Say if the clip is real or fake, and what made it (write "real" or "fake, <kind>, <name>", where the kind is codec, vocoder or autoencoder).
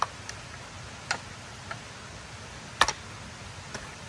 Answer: real